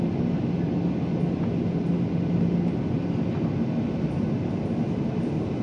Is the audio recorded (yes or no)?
yes